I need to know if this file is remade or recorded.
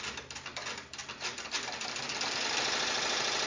recorded